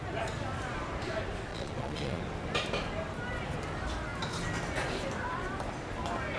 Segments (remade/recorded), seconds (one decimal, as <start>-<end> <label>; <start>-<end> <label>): 0.0-1.5 recorded; 1.5-2.2 remade; 2.2-6.4 recorded